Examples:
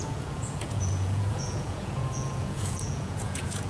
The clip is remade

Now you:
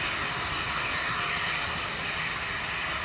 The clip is recorded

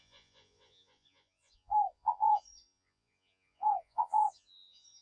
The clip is remade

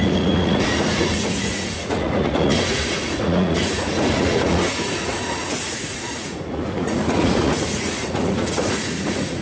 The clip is remade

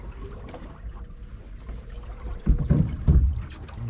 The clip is recorded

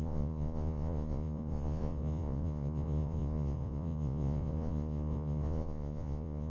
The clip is remade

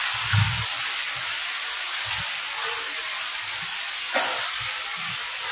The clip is recorded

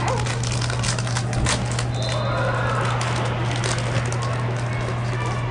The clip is recorded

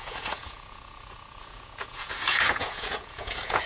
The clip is remade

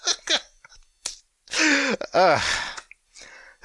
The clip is recorded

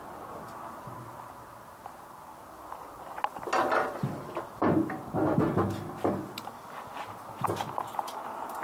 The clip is recorded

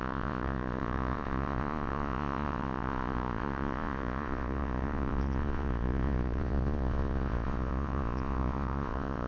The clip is remade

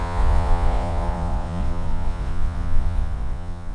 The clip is remade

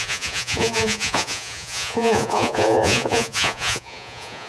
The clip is remade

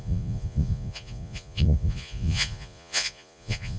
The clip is remade